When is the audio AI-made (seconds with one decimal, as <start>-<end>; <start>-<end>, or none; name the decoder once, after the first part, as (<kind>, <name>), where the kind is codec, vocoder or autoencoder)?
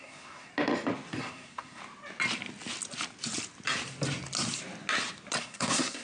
0.0-0.5 (codec, SNAC); 1.2-1.8; 5.4-6.0